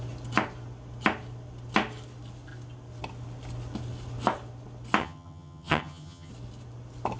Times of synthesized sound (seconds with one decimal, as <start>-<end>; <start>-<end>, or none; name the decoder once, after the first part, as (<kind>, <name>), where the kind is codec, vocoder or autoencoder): 5.0-6.3 (vocoder, HiFi-GAN)

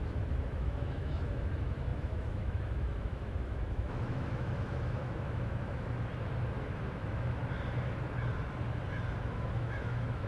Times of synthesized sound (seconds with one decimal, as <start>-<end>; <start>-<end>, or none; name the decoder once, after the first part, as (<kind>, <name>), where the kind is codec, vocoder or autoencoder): 0.0-6.1 (autoencoder, DAC-VAE); 6.6-7.4; 9.3-10.3

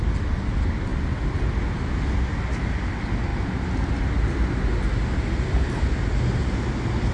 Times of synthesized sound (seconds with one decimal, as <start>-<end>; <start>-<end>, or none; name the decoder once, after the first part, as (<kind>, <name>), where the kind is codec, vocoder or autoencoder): none

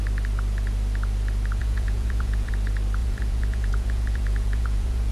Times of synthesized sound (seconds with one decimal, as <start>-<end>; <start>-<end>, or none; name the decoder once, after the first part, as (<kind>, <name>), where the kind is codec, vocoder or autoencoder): 1.6-2.5 (vocoder, Vocos); 3.0-5.1